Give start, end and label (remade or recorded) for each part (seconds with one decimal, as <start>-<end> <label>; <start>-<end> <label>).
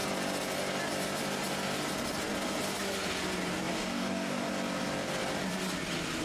0.0-3.7 recorded; 3.7-4.5 remade; 4.5-6.2 recorded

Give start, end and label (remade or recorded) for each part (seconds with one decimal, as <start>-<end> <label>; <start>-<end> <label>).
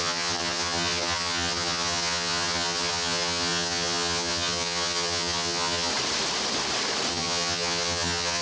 0.0-5.9 remade; 5.9-7.1 recorded; 7.1-8.4 remade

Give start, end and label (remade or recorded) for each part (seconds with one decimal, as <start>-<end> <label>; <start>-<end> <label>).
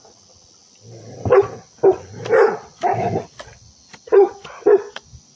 0.0-5.4 recorded